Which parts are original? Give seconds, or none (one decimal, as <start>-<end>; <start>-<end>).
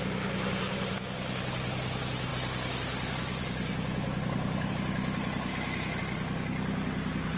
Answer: 0.0-5.5; 6.0-7.4